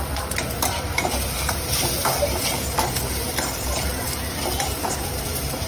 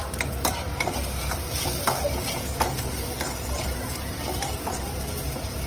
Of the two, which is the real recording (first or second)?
second